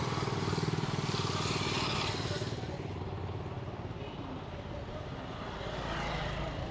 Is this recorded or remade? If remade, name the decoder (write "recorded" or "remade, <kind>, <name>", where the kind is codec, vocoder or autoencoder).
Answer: recorded